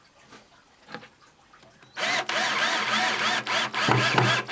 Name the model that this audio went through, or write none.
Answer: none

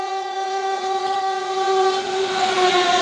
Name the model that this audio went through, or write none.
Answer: vocoder, Vocos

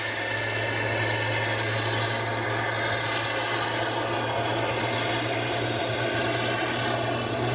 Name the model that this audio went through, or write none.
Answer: none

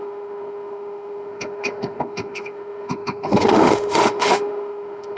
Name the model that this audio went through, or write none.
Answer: autoencoder, DAC-VAE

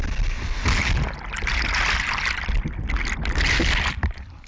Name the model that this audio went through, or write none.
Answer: none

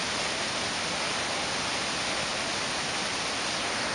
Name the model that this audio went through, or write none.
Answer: none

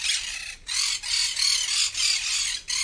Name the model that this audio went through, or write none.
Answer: none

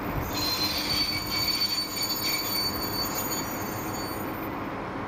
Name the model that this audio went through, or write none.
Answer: none